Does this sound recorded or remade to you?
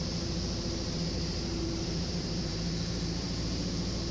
remade